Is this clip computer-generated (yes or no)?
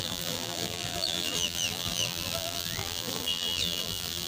yes